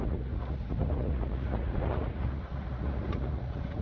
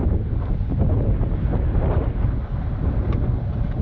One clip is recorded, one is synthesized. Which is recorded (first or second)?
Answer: second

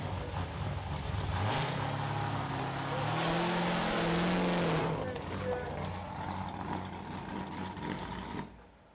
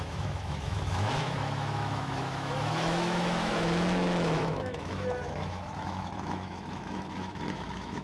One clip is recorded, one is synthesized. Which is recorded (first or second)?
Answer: first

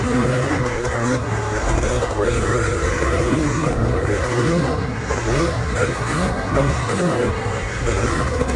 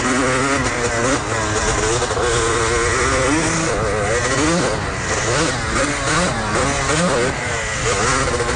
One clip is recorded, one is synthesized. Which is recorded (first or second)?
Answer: second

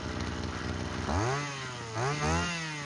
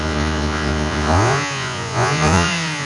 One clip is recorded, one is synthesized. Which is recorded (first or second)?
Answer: first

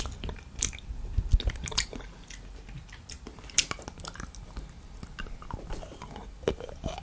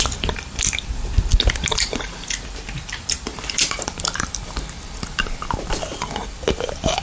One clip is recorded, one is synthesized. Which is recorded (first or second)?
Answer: first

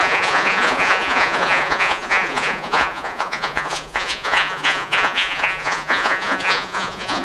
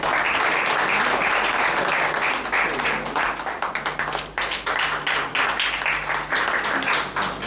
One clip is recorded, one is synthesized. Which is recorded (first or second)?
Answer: second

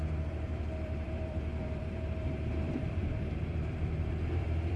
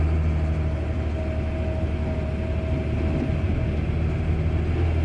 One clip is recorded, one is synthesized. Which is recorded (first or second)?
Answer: second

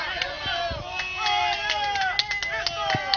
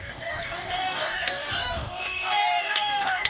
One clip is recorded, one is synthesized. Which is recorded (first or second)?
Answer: first